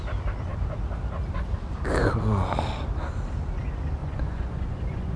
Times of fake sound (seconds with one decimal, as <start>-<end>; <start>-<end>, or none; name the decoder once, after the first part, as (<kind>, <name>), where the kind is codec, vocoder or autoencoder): 4.0-5.2 (vocoder, Vocos)